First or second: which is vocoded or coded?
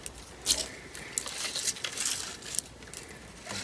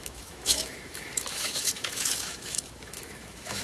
second